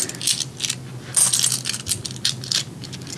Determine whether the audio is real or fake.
real